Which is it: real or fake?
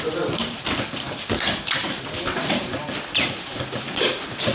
fake